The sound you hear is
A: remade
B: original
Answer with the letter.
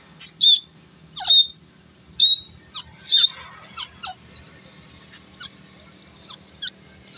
B